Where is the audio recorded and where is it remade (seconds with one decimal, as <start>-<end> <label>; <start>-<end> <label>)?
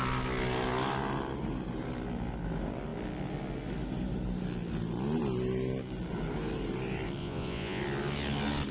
0.0-7.2 recorded; 7.2-7.8 remade; 7.8-8.7 recorded